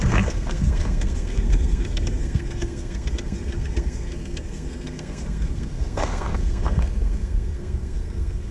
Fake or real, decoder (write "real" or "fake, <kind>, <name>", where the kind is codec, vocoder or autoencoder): fake, codec, SNAC